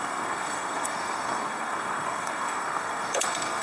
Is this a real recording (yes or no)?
no